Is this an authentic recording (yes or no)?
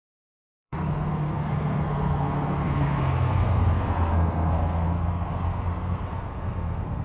no